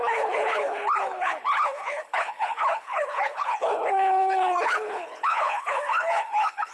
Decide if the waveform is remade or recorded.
remade